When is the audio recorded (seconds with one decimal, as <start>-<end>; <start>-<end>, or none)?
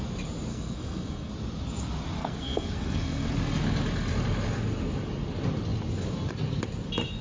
0.0-0.5; 1.3-2.2; 3.3-7.2